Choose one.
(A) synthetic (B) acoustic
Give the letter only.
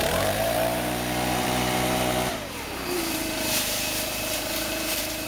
A